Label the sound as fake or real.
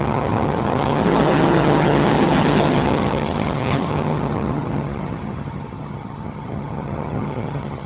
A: fake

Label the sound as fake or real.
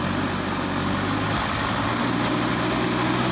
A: real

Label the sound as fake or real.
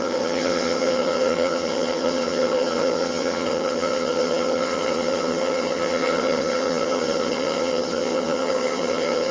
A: fake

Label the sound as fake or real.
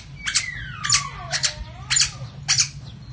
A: real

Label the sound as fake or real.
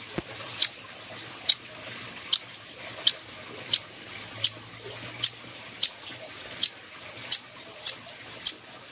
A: real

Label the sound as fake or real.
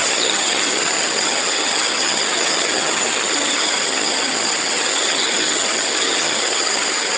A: fake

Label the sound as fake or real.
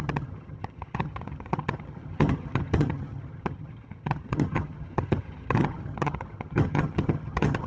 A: fake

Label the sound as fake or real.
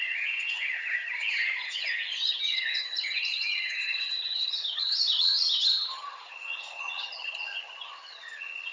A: fake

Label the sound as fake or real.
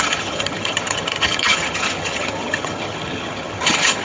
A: fake